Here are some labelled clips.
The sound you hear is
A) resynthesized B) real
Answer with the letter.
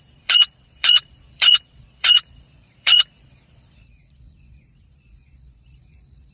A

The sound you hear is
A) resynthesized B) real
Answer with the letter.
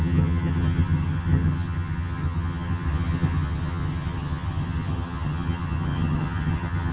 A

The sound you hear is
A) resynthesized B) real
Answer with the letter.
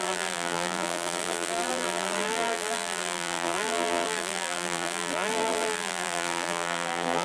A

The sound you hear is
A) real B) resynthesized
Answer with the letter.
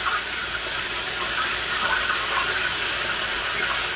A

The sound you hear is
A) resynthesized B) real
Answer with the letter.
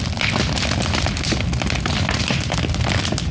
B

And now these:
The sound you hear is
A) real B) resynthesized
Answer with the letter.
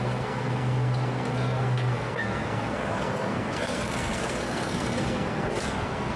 B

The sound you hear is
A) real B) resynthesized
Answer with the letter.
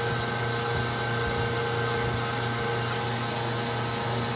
A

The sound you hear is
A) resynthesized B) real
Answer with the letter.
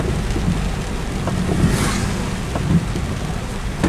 B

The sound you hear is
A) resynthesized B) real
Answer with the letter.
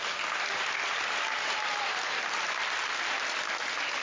B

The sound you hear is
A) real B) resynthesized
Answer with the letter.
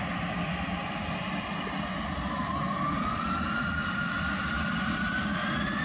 A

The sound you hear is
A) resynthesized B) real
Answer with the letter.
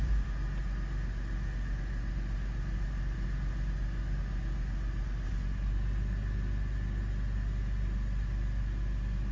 B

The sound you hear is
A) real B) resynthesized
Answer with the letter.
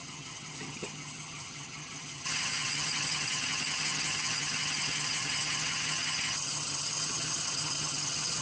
B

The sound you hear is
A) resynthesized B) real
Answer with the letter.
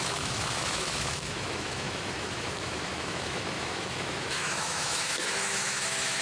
A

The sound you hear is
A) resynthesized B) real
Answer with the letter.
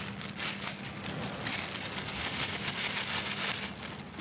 B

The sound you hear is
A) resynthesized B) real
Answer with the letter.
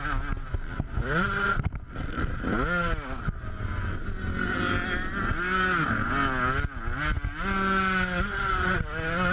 B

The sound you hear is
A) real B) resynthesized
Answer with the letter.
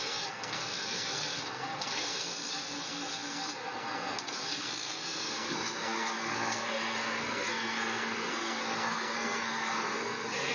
B